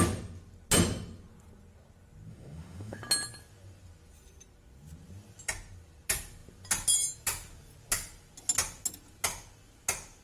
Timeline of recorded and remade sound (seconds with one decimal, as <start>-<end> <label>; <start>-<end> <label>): 0.0-2.3 recorded; 2.3-3.0 remade; 3.0-10.2 recorded